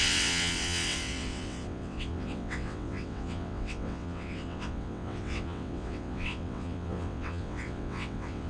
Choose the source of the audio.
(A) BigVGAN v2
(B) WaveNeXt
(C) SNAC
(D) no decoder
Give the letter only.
B